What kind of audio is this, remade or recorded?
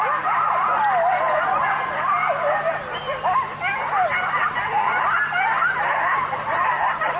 recorded